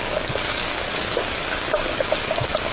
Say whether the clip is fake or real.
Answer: fake